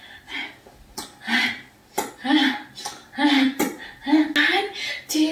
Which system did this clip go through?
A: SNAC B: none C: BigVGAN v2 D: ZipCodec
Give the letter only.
B